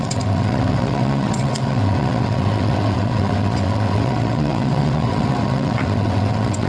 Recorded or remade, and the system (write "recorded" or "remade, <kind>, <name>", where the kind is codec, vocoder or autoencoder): remade, vocoder, WaveNeXt